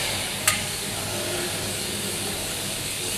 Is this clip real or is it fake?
fake